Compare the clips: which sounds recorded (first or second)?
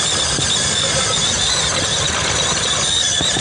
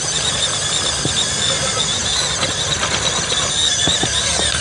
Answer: second